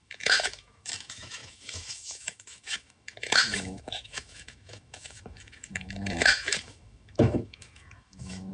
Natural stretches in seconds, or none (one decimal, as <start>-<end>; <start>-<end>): none